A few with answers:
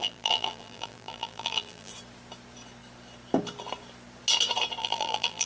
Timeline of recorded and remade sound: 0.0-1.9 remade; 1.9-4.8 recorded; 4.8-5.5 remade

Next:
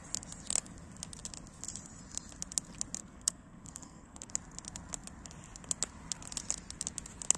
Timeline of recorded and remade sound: 0.0-3.0 recorded; 3.0-4.3 remade; 4.3-7.4 recorded

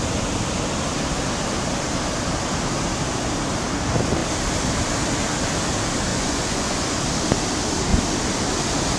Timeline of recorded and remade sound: 0.0-6.1 recorded; 6.1-7.0 remade; 7.0-9.0 recorded